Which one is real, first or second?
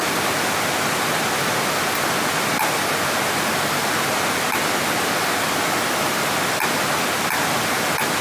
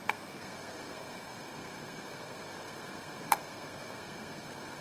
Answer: first